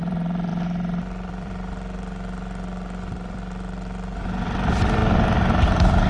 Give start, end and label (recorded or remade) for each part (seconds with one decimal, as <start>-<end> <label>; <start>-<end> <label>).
0.0-0.5 remade; 0.5-1.3 recorded; 1.3-5.0 remade; 5.0-5.5 recorded; 5.5-6.1 remade